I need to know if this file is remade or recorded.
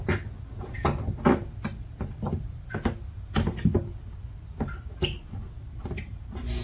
recorded